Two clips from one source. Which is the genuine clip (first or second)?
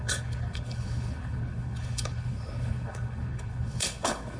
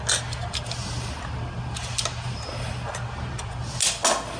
second